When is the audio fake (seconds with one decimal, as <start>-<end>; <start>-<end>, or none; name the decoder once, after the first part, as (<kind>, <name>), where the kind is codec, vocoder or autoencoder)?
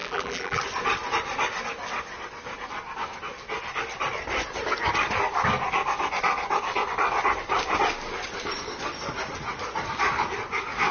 0.0-0.6 (vocoder, BigVGAN v2)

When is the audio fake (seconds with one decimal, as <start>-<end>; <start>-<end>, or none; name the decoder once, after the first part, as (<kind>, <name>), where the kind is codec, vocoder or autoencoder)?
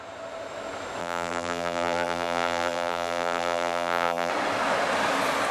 1.0-4.3 (vocoder, BigVGAN v2)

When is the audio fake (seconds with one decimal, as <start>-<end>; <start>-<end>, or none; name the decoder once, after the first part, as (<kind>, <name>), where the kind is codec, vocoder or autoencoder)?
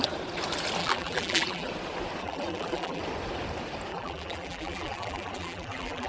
0.8-1.7 (vocoder, BigVGAN v2); 2.2-3.0; 3.9-6.1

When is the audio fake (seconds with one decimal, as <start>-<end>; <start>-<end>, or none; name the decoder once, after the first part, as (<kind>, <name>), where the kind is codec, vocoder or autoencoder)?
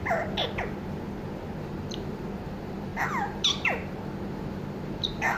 none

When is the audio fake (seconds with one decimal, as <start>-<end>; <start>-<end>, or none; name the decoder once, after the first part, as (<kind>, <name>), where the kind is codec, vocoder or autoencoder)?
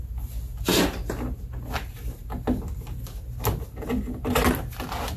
none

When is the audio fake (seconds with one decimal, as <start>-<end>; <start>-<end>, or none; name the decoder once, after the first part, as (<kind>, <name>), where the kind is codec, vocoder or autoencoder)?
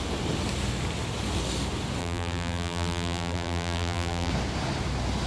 2.0-4.3 (vocoder, BigVGAN v2)